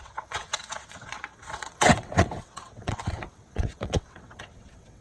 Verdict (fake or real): fake